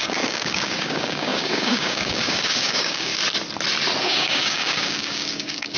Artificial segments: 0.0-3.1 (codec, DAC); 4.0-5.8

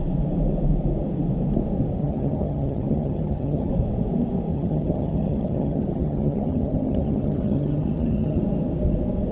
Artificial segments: 2.0-3.7 (vocoder, HiFi-GAN); 4.5-8.4